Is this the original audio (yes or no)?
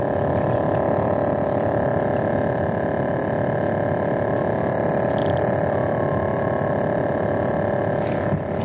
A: yes